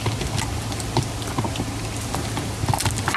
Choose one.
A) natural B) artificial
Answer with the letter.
A